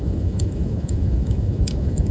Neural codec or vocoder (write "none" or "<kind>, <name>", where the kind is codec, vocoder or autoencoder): autoencoder, DAC-VAE